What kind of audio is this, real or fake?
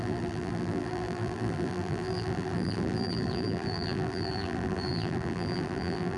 fake